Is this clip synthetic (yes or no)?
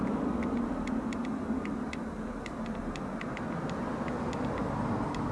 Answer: no